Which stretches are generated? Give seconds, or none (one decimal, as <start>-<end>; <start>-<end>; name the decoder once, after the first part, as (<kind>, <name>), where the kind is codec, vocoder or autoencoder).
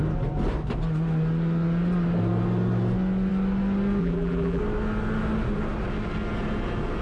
4.0-4.6 (vocoder, BigVGAN v2)